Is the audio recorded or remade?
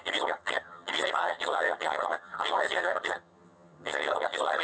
remade